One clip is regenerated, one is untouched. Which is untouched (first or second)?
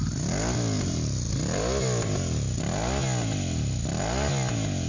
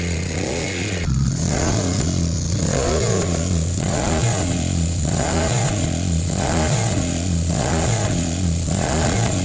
first